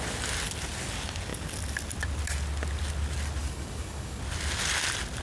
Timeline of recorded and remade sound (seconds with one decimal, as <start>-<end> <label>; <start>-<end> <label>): 0.0-3.4 recorded; 3.4-4.2 remade; 4.2-5.2 recorded